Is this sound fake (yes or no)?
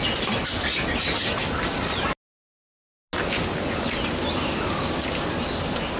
no